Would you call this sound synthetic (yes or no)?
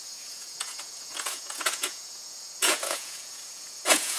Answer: yes